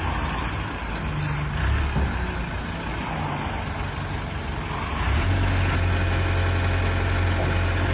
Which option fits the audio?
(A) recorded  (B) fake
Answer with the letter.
A